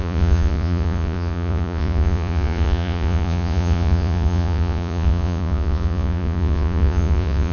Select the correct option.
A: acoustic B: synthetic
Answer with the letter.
B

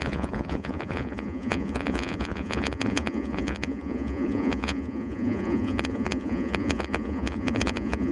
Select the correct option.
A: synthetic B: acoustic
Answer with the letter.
A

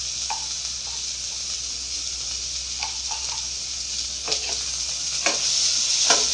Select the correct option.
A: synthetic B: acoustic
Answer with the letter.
B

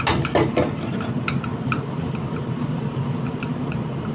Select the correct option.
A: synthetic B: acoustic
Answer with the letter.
B